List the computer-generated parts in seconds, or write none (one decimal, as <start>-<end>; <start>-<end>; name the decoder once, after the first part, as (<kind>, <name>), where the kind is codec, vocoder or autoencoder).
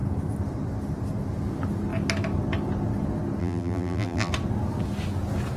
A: 3.4-4.3 (vocoder, BigVGAN v2)